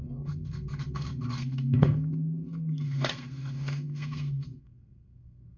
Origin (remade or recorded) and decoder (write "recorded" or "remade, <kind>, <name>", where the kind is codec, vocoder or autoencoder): remade, codec, SNAC